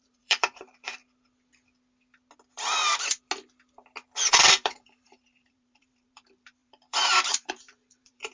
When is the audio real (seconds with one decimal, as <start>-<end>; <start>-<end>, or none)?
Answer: 1.0-4.3